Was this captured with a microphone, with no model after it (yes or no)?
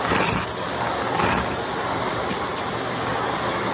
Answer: yes